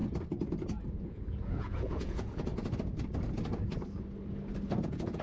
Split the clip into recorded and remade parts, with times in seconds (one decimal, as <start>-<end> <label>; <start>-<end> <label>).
0.0-0.8 recorded; 0.8-2.5 remade; 2.5-4.8 recorded; 4.8-5.2 remade